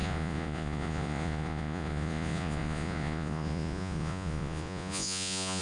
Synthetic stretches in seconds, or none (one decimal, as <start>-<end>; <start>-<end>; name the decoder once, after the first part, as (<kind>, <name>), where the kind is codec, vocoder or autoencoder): 0.0-5.6 (vocoder, Vocos)